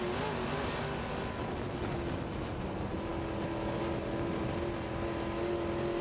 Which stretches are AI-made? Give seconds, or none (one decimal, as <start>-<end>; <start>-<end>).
none